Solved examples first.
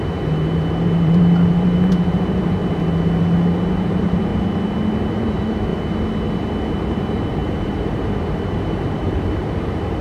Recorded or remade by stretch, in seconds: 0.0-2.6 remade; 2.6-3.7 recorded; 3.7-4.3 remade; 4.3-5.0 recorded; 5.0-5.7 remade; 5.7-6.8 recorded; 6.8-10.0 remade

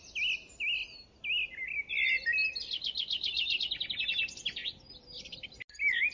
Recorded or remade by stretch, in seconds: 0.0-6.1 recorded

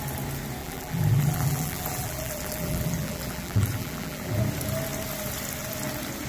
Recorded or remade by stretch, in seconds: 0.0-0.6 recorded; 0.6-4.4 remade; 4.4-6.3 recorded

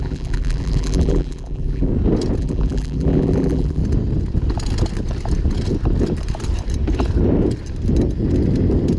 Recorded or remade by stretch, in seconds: 0.0-1.9 remade; 1.9-2.4 recorded; 2.4-3.8 remade; 3.8-9.0 recorded

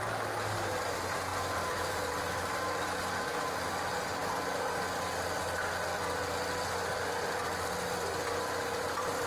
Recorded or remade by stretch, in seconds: 0.0-1.3 recorded; 1.3-2.5 remade; 2.5-9.3 recorded